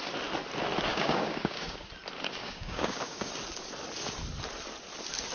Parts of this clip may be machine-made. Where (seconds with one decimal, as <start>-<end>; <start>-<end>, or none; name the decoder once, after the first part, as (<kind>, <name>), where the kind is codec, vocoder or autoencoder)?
0.9-1.9 (codec, DAC); 2.4-3.3

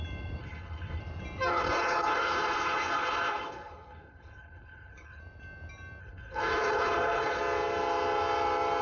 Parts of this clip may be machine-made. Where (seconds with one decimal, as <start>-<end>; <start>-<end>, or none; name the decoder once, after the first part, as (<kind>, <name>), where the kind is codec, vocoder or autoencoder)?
0.4-1.0 (codec, HILCodec); 1.5-5.2; 6.0-7.4